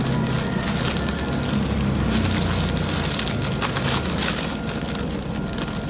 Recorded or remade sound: recorded